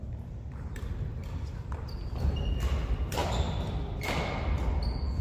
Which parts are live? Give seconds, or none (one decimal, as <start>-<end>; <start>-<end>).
0.0-3.2; 3.7-5.2